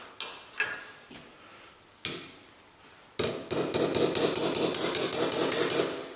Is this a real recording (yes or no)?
yes